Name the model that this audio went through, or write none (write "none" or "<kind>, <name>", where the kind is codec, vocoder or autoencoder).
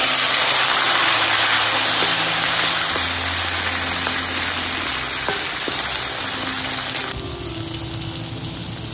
none